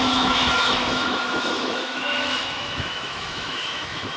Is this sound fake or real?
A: fake